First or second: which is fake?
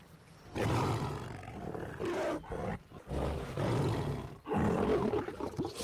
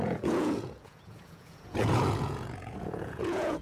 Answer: second